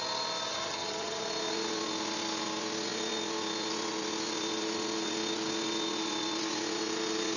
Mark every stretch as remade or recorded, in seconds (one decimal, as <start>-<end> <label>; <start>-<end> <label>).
0.0-0.5 recorded; 0.5-1.2 remade; 1.2-7.4 recorded